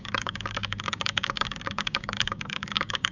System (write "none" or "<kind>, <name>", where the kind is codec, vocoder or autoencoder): codec, DAC